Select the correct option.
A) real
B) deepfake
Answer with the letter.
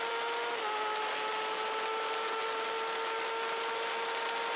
A